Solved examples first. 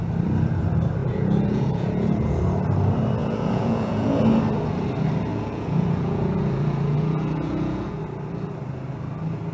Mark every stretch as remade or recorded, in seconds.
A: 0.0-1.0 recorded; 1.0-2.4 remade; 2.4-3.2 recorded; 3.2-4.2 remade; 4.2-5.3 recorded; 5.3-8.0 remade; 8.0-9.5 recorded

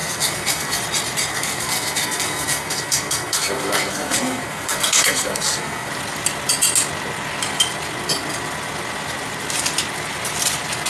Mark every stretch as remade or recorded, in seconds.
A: 0.0-0.8 remade; 0.8-1.3 recorded; 1.3-5.9 remade; 5.9-10.9 recorded

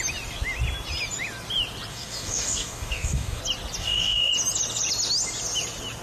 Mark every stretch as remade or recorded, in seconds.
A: 0.0-1.9 recorded; 1.9-3.4 remade; 3.4-3.8 recorded; 3.8-4.3 remade; 4.3-6.0 recorded

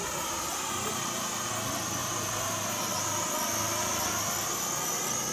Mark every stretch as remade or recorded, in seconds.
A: 0.0-1.5 remade; 1.5-2.0 recorded; 2.0-2.9 remade; 2.9-5.3 recorded

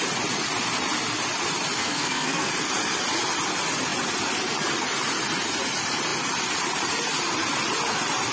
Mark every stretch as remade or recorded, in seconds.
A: 0.0-1.8 recorded; 1.8-2.5 remade; 2.5-8.3 recorded

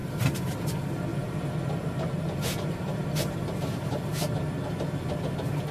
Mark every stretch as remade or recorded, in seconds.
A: 0.0-0.5 remade; 0.5-1.1 recorded; 1.1-4.5 remade; 4.5-5.7 recorded

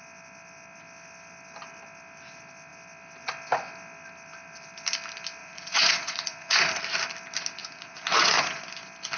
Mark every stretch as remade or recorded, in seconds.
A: 0.0-5.4 recorded; 5.4-6.8 remade; 6.8-7.6 recorded; 7.6-8.6 remade; 8.6-9.2 recorded

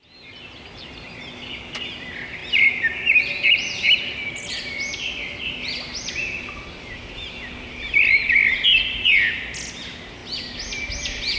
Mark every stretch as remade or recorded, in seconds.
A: 0.0-11.4 recorded